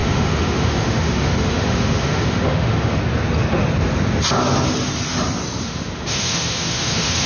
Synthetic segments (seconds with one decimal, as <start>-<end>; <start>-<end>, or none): 0.0-3.0; 5.6-7.3